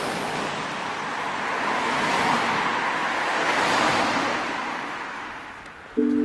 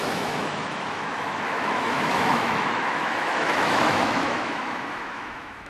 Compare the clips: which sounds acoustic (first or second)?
first